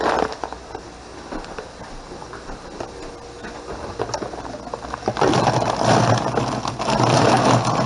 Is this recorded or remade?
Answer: recorded